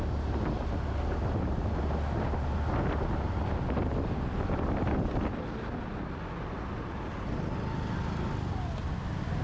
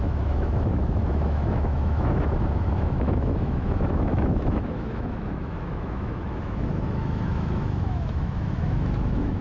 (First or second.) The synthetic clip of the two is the second